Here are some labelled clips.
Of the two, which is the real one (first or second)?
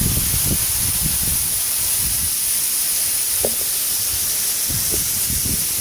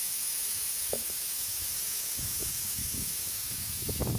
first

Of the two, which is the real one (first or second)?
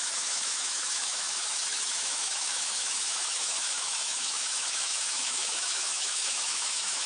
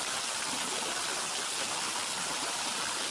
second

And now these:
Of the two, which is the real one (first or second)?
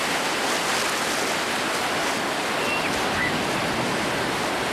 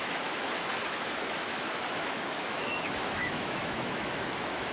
first